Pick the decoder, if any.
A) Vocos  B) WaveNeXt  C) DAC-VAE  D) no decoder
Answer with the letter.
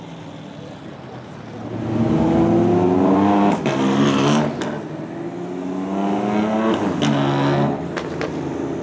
D